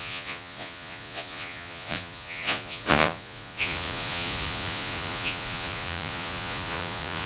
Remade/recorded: remade